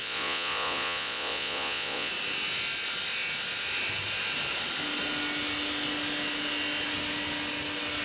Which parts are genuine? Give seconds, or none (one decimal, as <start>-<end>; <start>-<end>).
2.1-8.0